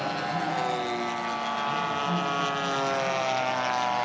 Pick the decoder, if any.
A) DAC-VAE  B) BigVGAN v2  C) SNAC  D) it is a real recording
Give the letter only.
D